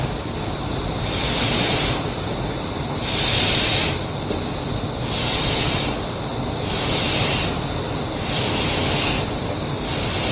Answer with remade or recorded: recorded